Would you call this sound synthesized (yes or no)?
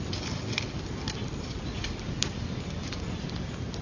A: no